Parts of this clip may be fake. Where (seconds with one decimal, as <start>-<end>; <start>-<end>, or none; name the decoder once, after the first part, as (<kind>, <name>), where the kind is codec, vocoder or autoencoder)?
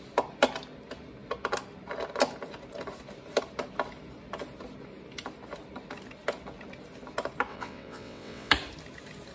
7.5-8.5 (vocoder, WaveNeXt)